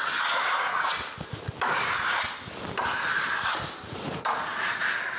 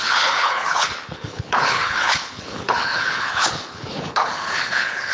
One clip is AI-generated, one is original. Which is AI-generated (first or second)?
second